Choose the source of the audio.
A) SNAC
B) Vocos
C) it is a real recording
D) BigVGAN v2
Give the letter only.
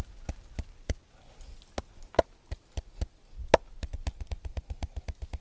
C